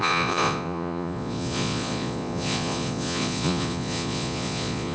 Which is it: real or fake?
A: fake